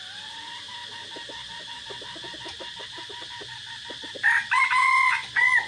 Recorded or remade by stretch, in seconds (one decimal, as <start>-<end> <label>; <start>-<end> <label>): 0.0-4.8 recorded; 4.8-5.7 remade